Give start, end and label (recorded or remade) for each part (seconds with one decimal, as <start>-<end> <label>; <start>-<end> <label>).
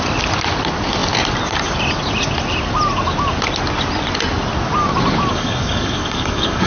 0.0-5.3 recorded; 5.3-6.7 remade